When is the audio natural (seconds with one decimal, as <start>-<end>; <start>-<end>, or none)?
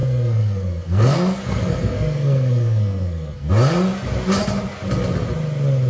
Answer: 3.5-5.9